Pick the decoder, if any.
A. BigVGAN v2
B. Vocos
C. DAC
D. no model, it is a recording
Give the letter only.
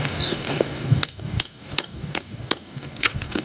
C